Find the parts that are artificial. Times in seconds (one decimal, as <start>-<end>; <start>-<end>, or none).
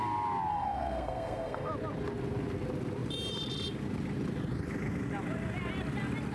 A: 0.5-1.7